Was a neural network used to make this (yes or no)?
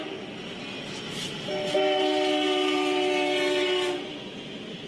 no